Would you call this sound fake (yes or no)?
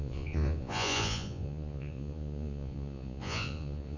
yes